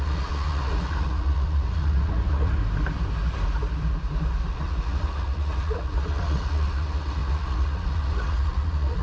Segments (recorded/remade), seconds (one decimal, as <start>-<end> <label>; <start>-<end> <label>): 0.0-2.6 remade; 2.6-4.5 recorded; 4.5-9.0 remade